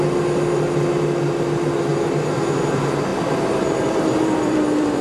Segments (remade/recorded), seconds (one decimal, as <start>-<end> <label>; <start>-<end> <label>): 0.0-3.1 recorded; 3.1-5.0 remade